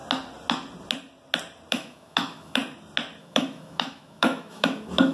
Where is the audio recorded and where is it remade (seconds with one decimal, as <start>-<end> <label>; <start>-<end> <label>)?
0.0-1.7 recorded; 1.7-2.6 remade; 2.6-3.2 recorded; 3.2-5.1 remade

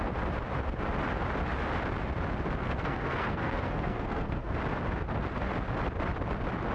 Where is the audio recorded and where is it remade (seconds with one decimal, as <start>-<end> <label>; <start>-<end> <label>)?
0.0-2.6 recorded; 2.6-4.5 remade; 4.5-6.7 recorded

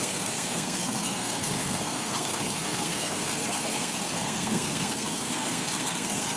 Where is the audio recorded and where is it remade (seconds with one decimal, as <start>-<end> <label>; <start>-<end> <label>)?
0.0-6.4 remade

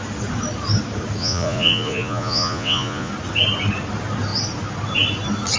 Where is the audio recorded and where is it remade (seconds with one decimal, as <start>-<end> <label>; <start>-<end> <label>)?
0.0-1.2 recorded; 1.2-3.1 remade; 3.1-5.6 recorded

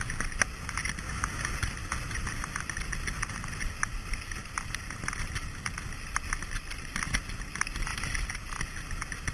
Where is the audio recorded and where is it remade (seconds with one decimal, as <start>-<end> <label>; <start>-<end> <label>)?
0.0-9.3 recorded

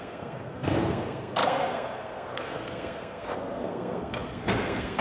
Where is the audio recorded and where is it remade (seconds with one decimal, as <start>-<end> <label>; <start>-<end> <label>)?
0.0-5.0 remade

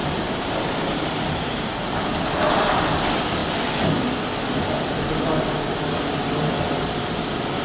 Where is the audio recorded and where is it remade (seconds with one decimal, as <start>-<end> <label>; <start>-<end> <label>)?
0.0-2.8 remade; 2.8-7.6 recorded

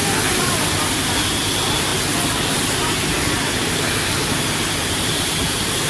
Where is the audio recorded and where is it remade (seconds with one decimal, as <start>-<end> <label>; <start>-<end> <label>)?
0.0-0.8 recorded; 0.8-1.9 remade; 1.9-2.5 recorded; 2.5-5.9 remade